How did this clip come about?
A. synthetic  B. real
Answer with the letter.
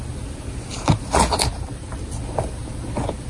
B